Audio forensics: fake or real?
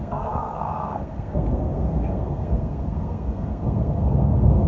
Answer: fake